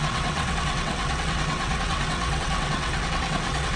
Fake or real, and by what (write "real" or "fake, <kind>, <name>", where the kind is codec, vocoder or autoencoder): fake, vocoder, WaveNeXt